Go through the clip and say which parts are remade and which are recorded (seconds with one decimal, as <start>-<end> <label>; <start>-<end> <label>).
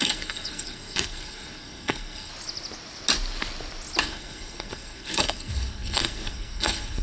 0.0-2.3 remade; 2.3-4.0 recorded; 4.0-7.0 remade